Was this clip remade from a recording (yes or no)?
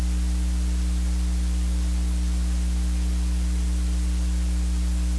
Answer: yes